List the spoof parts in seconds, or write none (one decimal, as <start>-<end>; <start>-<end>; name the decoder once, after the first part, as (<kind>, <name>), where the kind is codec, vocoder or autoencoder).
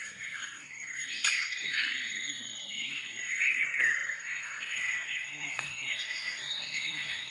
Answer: 0.0-7.3 (codec, SNAC)